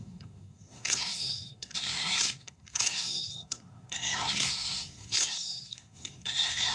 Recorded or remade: remade